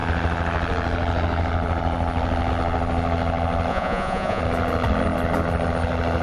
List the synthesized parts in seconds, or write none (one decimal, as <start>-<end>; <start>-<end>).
3.7-4.4